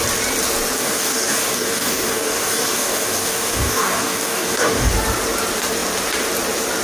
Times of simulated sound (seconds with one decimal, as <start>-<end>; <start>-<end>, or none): 0.8-4.9